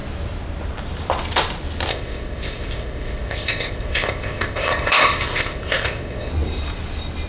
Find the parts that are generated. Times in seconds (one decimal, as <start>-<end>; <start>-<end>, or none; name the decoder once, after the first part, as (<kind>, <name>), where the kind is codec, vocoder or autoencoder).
1.9-6.3 (codec, ZipCodec)